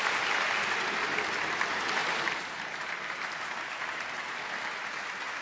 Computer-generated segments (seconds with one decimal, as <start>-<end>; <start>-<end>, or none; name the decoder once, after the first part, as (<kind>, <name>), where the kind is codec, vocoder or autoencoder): 2.0-4.6 (vocoder, BigVGAN v2)

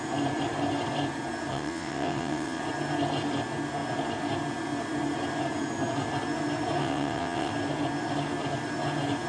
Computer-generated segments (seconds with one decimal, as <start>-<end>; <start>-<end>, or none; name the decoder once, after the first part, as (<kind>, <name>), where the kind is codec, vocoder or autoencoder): 1.5-2.6 (vocoder, WaveNeXt); 6.8-7.5

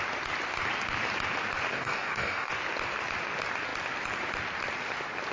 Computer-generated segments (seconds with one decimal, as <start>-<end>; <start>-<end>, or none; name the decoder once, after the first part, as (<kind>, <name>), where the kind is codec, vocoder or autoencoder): 1.7-2.5 (codec, DAC)

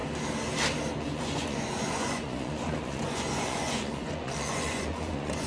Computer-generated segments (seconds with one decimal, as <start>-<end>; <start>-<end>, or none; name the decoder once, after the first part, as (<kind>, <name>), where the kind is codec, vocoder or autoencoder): 1.0-5.5 (vocoder, Vocos)